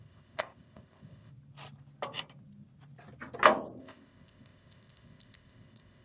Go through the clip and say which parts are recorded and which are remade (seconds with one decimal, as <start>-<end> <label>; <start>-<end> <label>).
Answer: 0.0-1.3 remade; 1.3-3.8 recorded; 3.8-6.0 remade